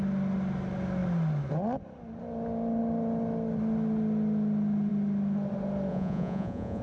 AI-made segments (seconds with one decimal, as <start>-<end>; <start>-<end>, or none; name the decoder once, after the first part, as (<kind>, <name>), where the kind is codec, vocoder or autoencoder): 5.9-6.8 (vocoder, Vocos)